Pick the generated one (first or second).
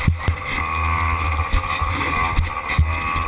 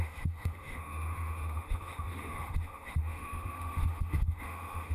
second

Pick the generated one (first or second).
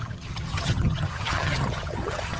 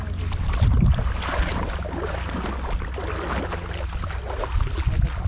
first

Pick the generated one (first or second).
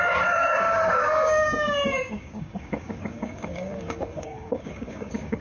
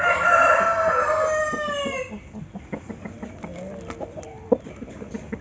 first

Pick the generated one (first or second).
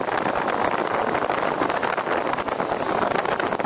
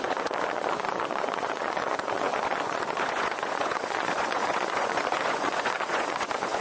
second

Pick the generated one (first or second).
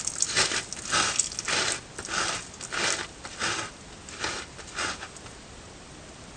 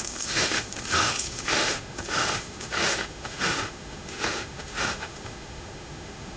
second